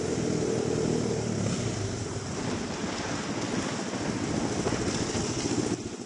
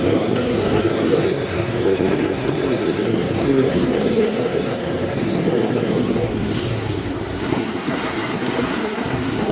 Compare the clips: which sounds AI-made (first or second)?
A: second